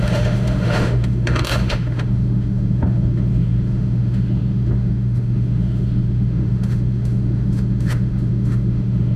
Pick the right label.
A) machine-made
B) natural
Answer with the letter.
A